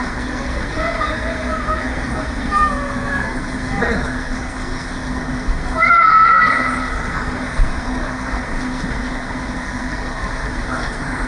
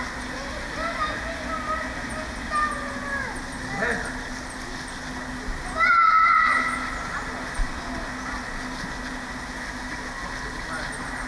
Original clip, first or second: second